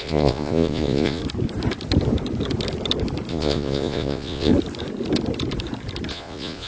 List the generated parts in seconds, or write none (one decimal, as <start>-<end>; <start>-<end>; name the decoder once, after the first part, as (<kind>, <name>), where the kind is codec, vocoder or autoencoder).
0.0-1.2 (vocoder, Vocos); 3.3-4.5; 6.1-6.7